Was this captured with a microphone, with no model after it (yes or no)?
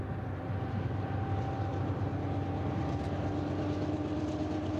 yes